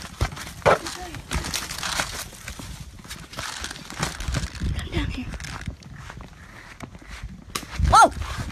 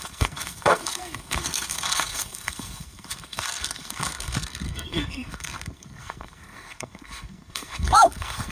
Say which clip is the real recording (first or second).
first